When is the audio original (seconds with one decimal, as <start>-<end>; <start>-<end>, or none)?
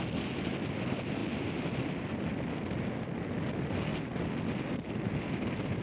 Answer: 0.0-5.8